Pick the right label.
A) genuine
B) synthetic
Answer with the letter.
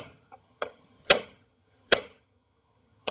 B